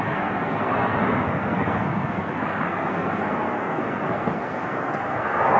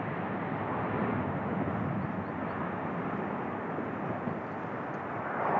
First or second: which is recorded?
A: second